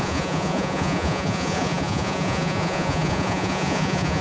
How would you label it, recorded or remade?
remade